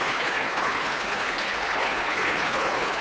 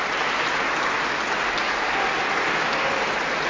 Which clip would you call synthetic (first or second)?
first